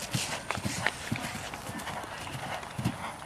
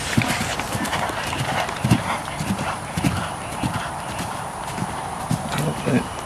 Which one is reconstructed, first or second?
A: second